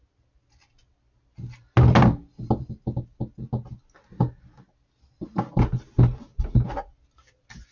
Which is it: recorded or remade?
recorded